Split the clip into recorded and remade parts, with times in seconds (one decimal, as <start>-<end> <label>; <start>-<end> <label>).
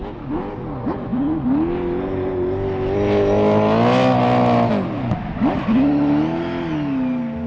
0.0-7.5 recorded